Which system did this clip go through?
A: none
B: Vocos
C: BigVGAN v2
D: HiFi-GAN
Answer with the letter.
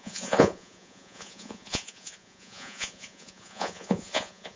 B